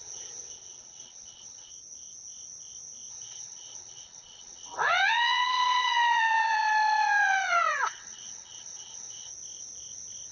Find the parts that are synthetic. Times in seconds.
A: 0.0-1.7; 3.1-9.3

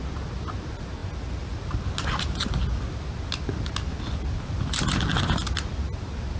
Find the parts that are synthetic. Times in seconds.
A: none

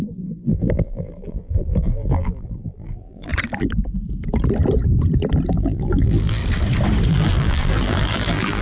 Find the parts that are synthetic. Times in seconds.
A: 0.0-3.3; 5.5-6.4; 7.1-8.6

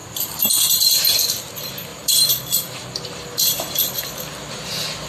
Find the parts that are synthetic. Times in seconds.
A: 0.0-1.0; 1.9-5.1

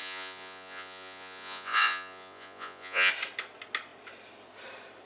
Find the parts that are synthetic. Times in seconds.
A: 0.0-3.1

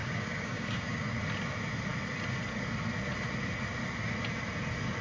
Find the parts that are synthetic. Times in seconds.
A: 0.0-1.2

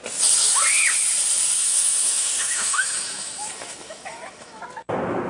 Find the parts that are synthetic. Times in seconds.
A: 1.6-4.6